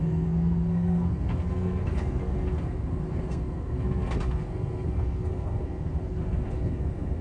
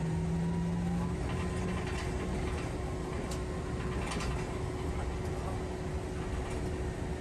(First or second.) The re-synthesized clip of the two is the first